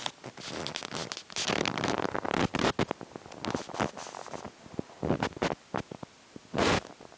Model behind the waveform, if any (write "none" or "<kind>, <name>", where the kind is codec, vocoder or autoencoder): none